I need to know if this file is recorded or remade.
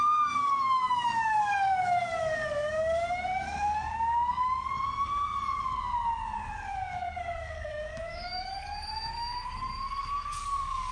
remade